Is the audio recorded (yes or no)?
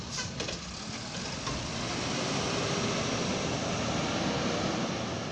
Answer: yes